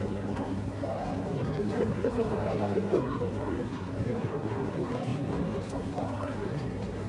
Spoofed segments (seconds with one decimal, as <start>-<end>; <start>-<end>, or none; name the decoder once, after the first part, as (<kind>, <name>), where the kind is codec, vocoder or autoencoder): 0.0-7.1 (codec, SNAC)